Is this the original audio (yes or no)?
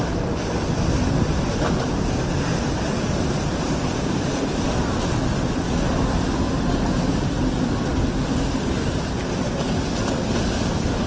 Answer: yes